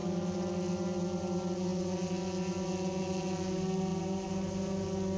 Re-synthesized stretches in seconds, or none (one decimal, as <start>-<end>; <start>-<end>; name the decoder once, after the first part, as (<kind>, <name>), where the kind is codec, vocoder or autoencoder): none